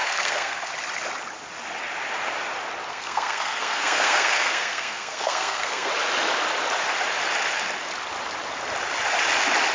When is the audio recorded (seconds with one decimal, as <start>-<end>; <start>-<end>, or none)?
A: 0.7-2.9; 5.9-9.7